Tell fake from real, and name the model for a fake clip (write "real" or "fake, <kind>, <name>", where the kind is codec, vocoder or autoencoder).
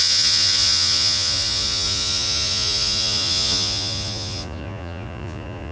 fake, vocoder, Vocos